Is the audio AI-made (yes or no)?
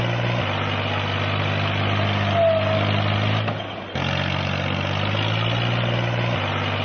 no